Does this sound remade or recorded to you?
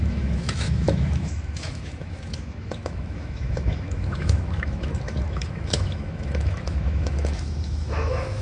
remade